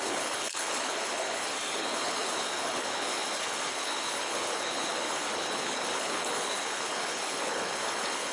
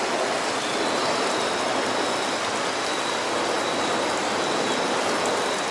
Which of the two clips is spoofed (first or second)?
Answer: first